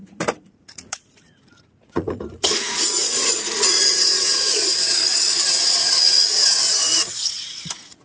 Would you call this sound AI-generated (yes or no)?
yes